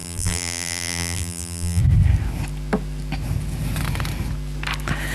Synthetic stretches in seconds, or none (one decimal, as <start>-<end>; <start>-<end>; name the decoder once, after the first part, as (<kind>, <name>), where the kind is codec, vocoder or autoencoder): 0.0-1.8 (vocoder, BigVGAN v2)